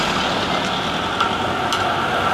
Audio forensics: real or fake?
real